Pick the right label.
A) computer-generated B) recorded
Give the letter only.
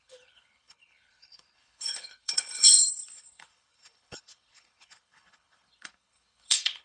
A